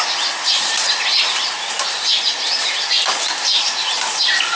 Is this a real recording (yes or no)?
yes